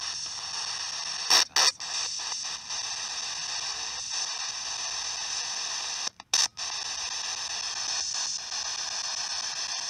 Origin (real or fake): real